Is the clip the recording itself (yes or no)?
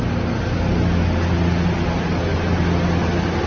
yes